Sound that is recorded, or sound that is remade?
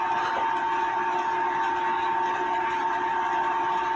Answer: recorded